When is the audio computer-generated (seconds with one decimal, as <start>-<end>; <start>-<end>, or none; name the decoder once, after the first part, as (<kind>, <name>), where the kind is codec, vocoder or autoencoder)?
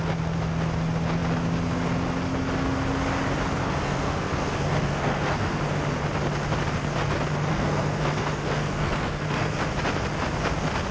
3.6-5.6 (codec, SNAC); 7.5-9.6